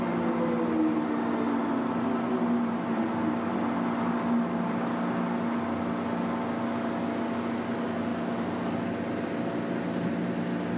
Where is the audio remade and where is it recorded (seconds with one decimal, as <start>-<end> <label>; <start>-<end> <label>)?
0.0-10.8 recorded